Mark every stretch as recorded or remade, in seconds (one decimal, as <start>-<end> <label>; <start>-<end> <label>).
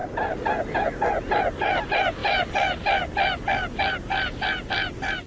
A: 0.0-5.3 recorded